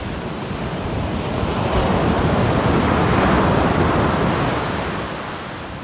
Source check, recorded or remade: recorded